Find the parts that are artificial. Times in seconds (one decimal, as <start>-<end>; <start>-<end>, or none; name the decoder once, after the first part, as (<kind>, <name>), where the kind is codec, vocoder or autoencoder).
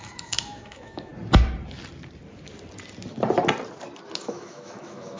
0.0-1.1 (autoencoder, DAC-VAE); 4.2-5.2